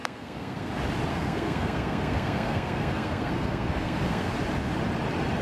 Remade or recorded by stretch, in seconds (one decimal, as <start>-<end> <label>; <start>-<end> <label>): 0.0-0.7 remade; 0.7-1.1 recorded; 1.1-4.3 remade; 4.3-5.4 recorded